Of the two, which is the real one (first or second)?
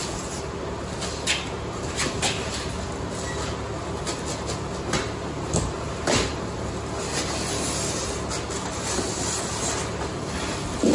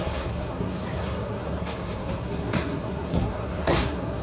first